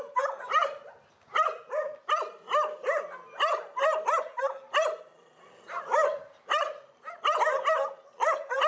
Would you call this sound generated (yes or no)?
no